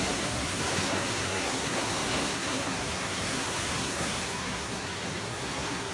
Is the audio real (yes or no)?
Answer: no